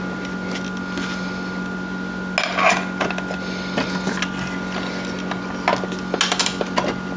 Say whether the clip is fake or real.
real